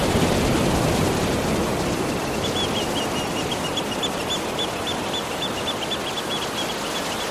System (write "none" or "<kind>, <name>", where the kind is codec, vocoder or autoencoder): none